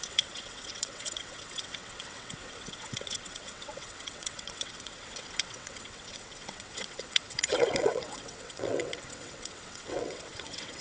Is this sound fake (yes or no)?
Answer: yes